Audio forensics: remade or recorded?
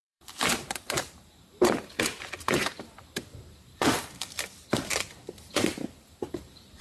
remade